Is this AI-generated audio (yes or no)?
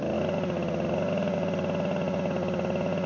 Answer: no